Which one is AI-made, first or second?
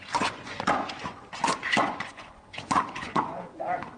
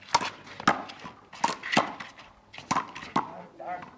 first